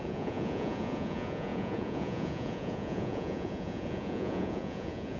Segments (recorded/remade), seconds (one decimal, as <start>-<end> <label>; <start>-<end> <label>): 0.0-5.2 remade